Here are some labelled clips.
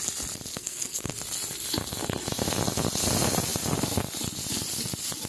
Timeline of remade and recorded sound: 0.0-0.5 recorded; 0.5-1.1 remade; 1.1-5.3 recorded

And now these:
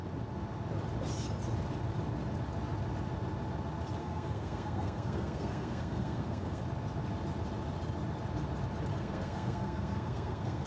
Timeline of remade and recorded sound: 0.0-4.0 recorded; 4.0-6.6 remade; 6.6-8.9 recorded; 8.9-10.7 remade

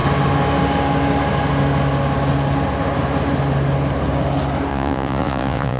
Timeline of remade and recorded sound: 0.0-4.7 recorded; 4.7-5.8 remade

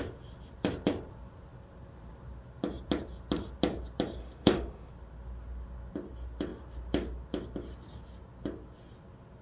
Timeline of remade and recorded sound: 0.0-4.2 recorded; 4.2-4.9 remade; 4.9-9.4 recorded

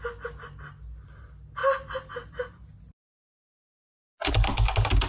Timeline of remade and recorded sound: 0.0-5.1 recorded

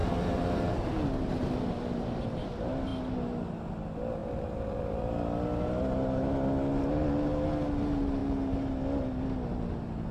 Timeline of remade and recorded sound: 0.0-0.9 remade; 0.9-4.2 recorded; 4.2-5.0 remade; 5.0-10.1 recorded